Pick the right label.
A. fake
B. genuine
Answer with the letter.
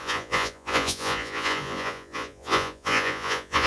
A